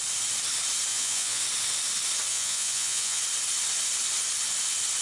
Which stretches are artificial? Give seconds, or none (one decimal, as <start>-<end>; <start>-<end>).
0.9-1.4; 2.3-3.2